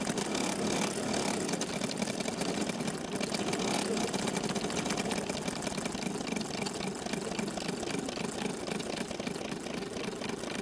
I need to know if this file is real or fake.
real